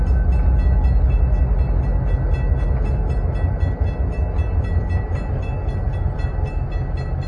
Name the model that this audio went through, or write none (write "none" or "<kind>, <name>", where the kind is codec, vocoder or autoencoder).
none